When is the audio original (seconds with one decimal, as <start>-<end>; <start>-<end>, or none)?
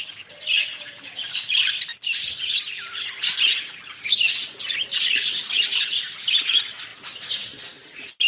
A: 0.0-0.7; 1.2-8.3